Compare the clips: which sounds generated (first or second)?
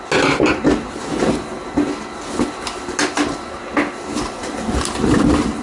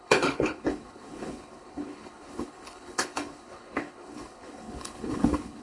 second